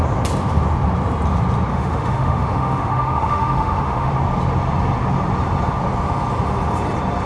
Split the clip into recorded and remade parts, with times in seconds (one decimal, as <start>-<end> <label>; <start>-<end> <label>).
0.0-1.7 recorded; 1.7-4.1 remade; 4.1-7.3 recorded